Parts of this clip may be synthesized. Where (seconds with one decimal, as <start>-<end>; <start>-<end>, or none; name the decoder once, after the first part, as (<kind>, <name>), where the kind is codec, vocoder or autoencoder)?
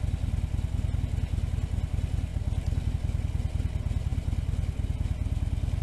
none